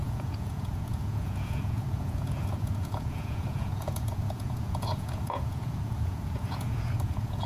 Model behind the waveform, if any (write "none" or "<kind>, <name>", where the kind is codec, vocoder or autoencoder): vocoder, Vocos